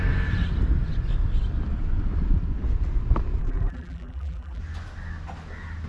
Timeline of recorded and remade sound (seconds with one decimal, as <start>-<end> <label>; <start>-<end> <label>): 0.0-3.4 recorded; 3.4-4.6 remade; 4.6-5.9 recorded